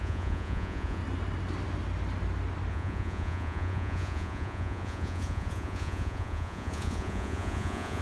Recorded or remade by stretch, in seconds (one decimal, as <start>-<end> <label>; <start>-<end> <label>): 0.0-1.0 remade; 1.0-2.7 recorded; 2.7-8.0 remade